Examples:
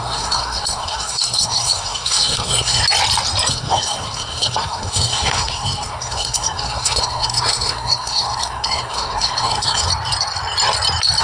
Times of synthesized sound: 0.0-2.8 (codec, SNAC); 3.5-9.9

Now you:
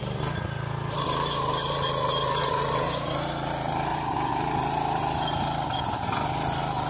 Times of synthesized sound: none